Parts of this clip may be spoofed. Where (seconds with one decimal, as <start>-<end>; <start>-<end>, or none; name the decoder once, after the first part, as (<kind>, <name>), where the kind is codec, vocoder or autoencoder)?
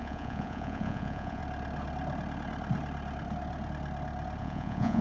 0.0-1.4 (vocoder, Vocos); 4.4-5.0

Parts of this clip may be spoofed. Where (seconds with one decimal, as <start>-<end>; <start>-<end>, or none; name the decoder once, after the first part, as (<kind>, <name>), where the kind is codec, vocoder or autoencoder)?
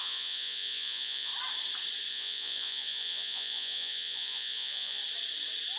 0.0-1.3 (vocoder, Vocos); 2.1-5.0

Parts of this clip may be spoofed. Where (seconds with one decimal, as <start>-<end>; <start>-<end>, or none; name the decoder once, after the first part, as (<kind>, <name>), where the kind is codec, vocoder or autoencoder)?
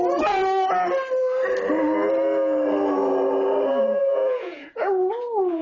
0.0-0.4 (vocoder, Vocos); 3.8-5.6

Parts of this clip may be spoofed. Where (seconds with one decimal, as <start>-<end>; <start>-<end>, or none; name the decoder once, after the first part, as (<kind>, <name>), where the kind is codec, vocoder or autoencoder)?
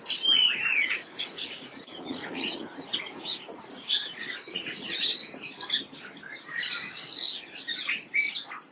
0.7-5.0 (vocoder, Vocos)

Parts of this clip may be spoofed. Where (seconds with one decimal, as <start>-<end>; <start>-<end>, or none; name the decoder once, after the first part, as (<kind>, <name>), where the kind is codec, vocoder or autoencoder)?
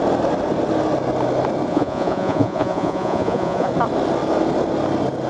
1.7-3.7 (vocoder, Vocos)